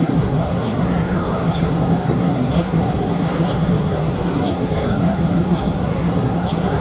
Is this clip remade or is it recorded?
remade